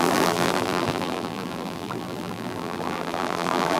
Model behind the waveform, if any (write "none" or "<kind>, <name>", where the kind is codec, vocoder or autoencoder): vocoder, BigVGAN v2